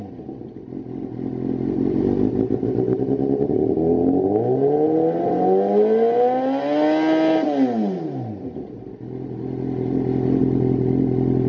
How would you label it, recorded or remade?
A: recorded